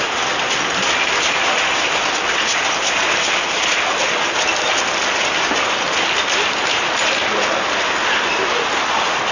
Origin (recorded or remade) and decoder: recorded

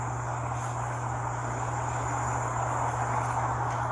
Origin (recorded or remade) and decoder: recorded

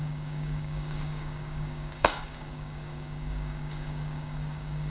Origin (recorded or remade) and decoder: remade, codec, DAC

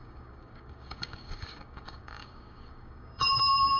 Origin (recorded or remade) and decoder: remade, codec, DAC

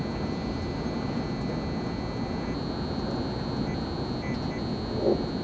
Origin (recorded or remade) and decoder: recorded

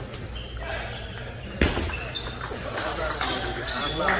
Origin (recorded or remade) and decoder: recorded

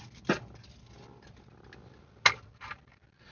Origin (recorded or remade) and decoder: recorded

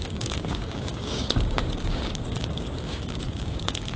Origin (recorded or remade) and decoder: remade, codec, DAC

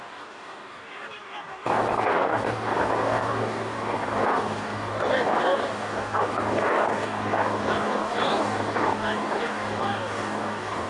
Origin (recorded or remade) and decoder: remade, codec, DAC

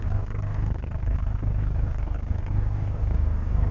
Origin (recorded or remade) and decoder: remade, codec, DAC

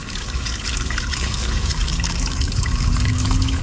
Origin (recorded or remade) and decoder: remade, codec, DAC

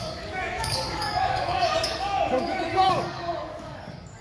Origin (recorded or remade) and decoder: remade, codec, DAC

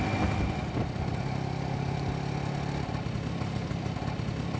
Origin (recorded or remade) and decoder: recorded